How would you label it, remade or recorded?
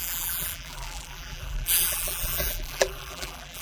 remade